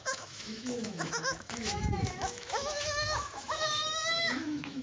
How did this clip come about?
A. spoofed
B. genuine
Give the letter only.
A